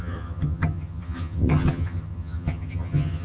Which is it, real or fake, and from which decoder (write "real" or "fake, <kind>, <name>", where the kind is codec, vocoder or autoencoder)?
fake, vocoder, HiFi-GAN